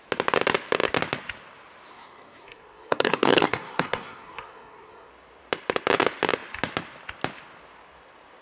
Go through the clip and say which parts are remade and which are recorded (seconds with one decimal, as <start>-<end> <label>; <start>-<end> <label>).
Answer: 0.0-1.9 recorded; 1.9-5.1 remade; 5.1-8.4 recorded